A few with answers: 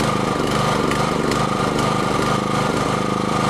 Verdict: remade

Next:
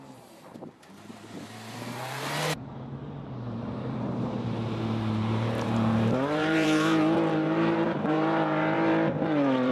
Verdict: remade